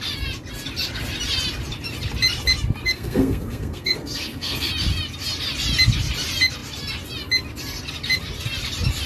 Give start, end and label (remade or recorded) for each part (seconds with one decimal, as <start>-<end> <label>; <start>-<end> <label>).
0.0-2.8 recorded; 2.8-4.7 remade; 4.7-9.1 recorded